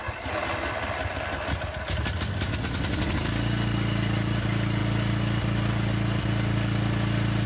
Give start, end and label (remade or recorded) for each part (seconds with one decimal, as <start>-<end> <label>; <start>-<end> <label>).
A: 0.0-7.5 recorded